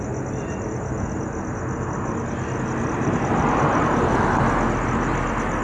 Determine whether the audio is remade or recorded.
recorded